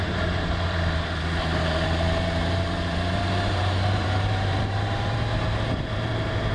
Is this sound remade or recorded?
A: remade